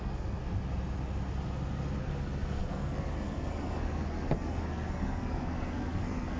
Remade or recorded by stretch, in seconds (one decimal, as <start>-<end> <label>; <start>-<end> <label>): 0.0-0.4 remade; 0.4-2.0 recorded; 2.0-6.4 remade